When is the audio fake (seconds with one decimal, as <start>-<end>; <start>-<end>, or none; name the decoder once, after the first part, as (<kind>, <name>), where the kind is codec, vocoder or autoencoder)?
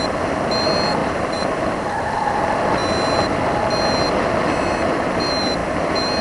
1.0-1.6 (vocoder, BigVGAN v2)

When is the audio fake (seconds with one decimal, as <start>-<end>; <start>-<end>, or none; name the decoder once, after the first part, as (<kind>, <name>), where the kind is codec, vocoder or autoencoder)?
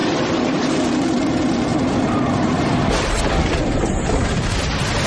0.0-0.7 (vocoder, BigVGAN v2); 1.7-3.2; 3.6-4.2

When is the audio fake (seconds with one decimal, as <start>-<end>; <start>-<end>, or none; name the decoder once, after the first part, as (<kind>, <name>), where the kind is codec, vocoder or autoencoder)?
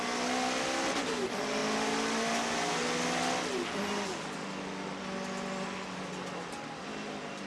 none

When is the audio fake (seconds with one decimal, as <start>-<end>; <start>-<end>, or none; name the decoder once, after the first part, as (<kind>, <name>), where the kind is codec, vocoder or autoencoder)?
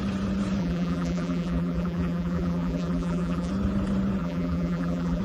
0.6-3.5 (vocoder, BigVGAN v2); 4.2-5.2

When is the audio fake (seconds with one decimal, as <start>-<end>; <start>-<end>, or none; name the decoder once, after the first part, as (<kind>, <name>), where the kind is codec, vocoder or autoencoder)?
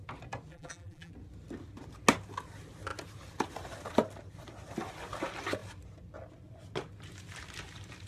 0.5-1.1 (vocoder, BigVGAN v2)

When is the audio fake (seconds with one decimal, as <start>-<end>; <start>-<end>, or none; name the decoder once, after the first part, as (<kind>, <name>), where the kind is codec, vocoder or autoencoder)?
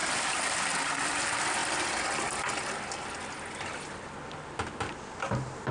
0.0-1.2 (vocoder, BigVGAN v2)